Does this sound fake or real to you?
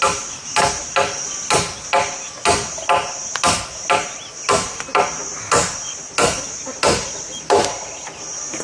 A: real